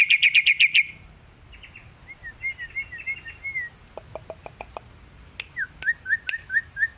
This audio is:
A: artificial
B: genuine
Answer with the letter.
B